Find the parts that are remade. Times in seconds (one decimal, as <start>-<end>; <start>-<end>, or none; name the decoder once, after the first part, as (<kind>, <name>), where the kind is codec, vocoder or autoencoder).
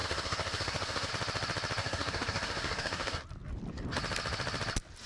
0.0-1.1 (codec, SNAC); 1.8-3.2